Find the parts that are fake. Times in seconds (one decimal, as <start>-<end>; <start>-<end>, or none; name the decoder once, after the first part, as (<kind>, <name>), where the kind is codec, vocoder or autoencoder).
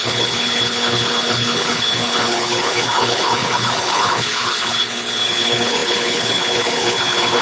0.0-7.4 (codec, HILCodec)